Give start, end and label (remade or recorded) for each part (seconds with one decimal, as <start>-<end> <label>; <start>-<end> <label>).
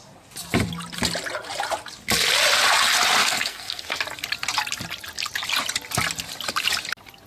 0.0-3.2 recorded; 3.2-4.0 remade; 4.0-7.3 recorded